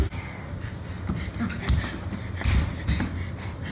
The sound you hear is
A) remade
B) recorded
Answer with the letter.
B